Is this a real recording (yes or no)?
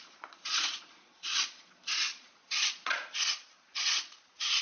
no